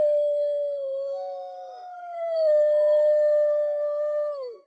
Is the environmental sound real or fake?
fake